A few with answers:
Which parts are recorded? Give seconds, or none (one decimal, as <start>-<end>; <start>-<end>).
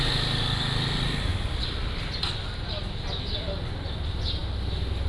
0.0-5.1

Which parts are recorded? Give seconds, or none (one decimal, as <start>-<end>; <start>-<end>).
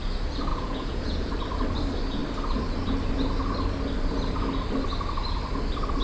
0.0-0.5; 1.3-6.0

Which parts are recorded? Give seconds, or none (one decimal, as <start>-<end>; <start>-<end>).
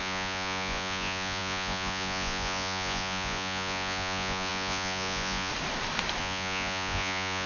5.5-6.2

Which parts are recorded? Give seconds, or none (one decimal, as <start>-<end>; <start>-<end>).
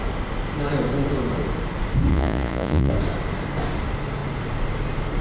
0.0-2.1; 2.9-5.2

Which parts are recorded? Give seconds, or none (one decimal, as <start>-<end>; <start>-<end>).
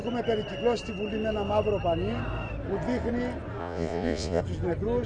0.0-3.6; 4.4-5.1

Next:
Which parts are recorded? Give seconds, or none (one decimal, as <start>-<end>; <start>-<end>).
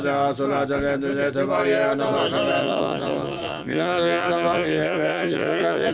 0.0-2.6